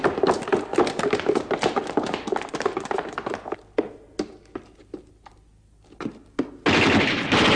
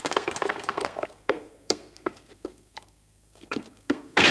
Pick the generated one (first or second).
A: second